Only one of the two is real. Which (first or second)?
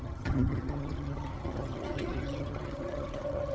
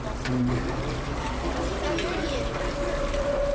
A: second